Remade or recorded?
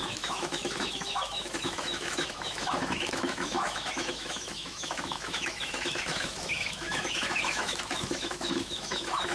remade